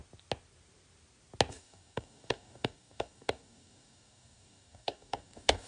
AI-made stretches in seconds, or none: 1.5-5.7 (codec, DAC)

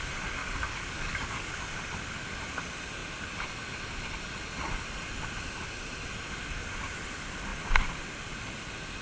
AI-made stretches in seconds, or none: 0.4-1.5 (codec, DAC)

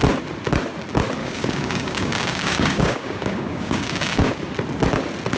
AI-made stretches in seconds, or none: 1.2-4.4 (codec, DAC)